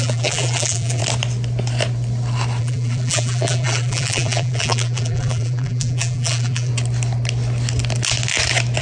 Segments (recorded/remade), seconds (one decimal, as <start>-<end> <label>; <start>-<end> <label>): 0.0-1.0 remade; 1.0-2.6 recorded; 2.6-6.7 remade; 6.7-8.8 recorded